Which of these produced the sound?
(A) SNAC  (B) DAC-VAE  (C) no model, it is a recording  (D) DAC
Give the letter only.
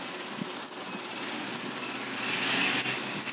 C